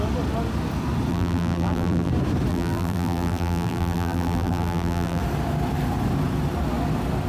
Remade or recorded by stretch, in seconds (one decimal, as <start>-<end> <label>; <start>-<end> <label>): 0.0-1.1 recorded; 1.1-2.1 remade; 2.1-2.5 recorded; 2.5-5.2 remade; 5.2-7.3 recorded